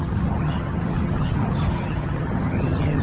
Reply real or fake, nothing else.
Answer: fake